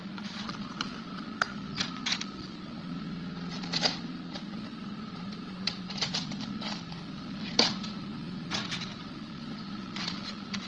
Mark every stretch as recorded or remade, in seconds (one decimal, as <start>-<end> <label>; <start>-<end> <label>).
0.0-10.7 remade